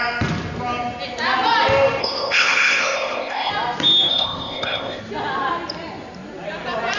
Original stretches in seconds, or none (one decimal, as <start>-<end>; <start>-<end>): 0.0-2.0; 3.5-4.1; 5.0-7.0

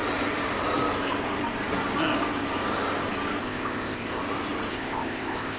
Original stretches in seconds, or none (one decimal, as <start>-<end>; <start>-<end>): 0.0-3.4; 4.2-4.7